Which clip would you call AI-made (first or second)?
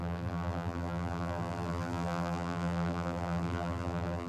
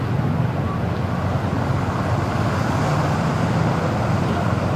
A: first